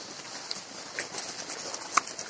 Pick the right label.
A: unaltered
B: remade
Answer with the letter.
A